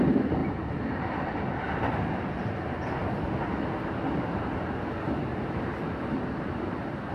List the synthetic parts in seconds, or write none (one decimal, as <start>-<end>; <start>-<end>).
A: none